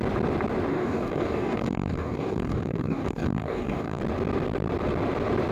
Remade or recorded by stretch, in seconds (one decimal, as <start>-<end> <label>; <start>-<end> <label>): 0.0-0.7 recorded; 0.7-4.0 remade; 4.0-5.5 recorded